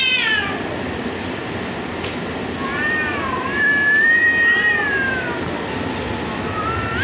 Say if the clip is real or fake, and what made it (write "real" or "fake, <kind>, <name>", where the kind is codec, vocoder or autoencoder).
fake, vocoder, BigVGAN v2